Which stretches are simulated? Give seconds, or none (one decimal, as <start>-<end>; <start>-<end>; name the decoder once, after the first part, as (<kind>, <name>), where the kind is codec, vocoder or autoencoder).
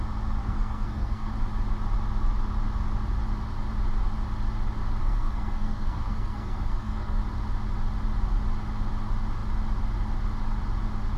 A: 0.4-1.3 (codec, SNAC); 5.0-7.2